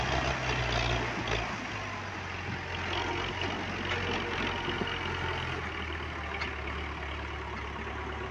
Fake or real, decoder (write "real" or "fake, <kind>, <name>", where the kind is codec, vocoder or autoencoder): real